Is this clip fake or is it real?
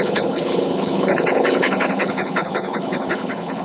fake